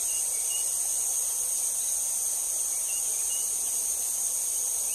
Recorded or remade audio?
recorded